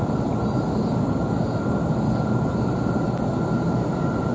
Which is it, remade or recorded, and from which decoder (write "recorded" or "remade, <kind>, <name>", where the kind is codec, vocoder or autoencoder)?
recorded